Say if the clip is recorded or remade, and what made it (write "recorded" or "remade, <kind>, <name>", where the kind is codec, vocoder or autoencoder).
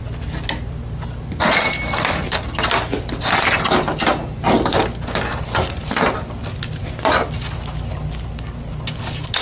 recorded